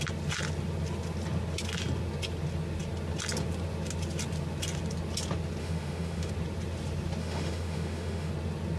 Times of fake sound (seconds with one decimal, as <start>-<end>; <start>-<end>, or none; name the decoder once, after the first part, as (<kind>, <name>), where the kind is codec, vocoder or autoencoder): 5.6-6.3 (autoencoder, DAC-VAE); 7.2-8.3